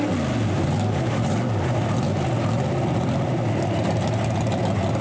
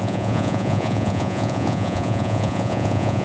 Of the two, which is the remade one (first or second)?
second